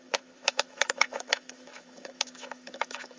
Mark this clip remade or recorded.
remade